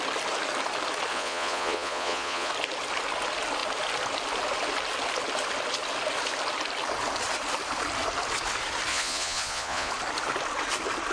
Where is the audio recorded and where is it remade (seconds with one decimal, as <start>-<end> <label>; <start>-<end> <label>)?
0.0-1.1 recorded; 1.1-2.5 remade; 2.5-8.9 recorded; 8.9-9.9 remade; 9.9-11.1 recorded